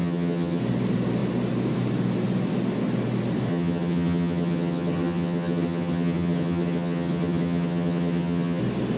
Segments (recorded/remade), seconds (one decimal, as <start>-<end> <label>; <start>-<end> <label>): 0.0-0.6 remade; 0.6-3.5 recorded; 3.5-8.6 remade; 8.6-9.0 recorded